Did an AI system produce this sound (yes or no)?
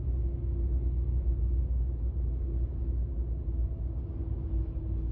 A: no